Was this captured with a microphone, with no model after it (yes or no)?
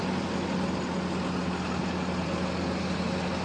yes